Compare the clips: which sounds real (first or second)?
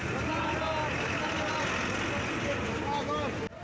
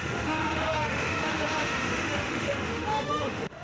first